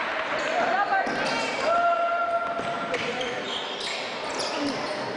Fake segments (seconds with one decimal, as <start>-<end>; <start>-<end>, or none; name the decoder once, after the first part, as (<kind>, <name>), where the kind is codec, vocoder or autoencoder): none